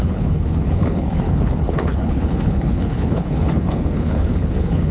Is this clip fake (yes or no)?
yes